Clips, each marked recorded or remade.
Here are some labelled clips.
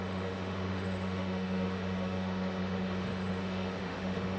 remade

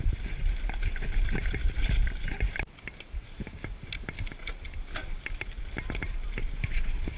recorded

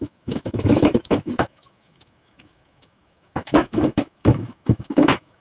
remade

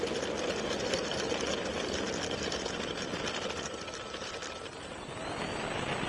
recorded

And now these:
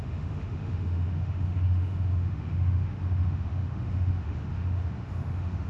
remade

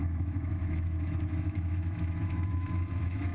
remade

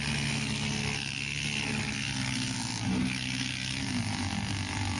recorded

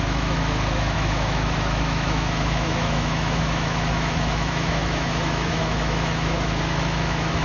remade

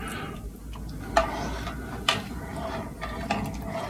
recorded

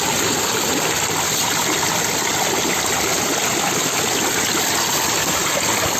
recorded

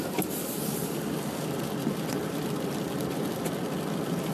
recorded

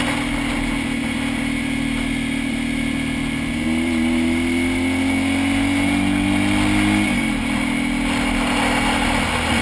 recorded